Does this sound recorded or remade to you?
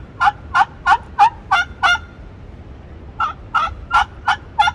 recorded